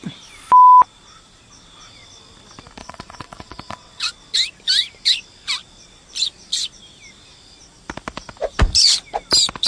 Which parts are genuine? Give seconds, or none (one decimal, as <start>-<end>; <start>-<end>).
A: 0.0-2.8; 4.1-9.7